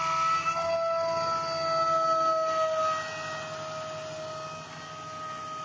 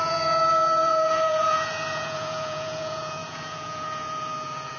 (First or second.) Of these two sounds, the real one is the first